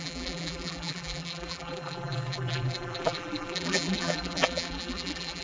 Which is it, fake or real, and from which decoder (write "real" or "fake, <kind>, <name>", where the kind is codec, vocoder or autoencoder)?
fake, vocoder, BigVGAN v2